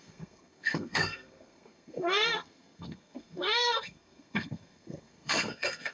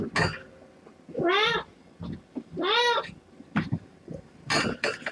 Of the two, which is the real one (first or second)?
second